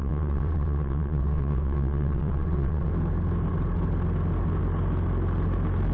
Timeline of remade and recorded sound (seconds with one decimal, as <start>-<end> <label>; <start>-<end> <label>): 0.0-2.9 remade; 2.9-5.9 recorded